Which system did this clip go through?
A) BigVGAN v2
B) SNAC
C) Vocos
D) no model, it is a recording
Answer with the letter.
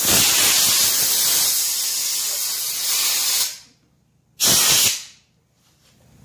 D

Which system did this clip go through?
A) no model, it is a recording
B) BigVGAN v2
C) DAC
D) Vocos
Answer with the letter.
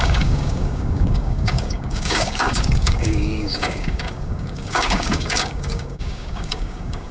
C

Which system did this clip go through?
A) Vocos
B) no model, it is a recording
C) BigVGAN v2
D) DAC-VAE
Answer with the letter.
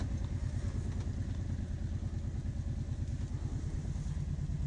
B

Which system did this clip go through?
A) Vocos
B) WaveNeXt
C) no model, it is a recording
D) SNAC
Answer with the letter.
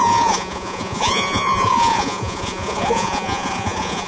A